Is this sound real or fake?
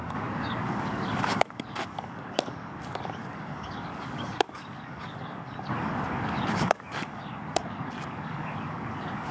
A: fake